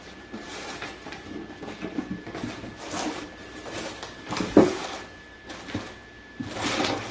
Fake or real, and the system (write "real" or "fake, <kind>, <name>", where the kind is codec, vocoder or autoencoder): real